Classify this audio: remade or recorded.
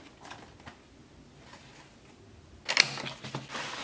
recorded